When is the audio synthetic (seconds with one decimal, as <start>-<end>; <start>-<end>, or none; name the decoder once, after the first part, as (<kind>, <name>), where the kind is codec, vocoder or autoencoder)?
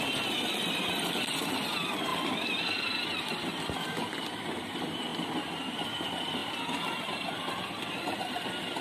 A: 0.0-2.1 (vocoder, BigVGAN v2); 3.6-5.1; 5.8-6.4; 7.0-8.8